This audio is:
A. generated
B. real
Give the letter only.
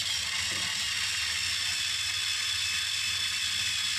B